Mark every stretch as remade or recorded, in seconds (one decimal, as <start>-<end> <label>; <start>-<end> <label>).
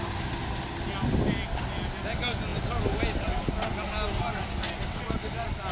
0.0-5.7 recorded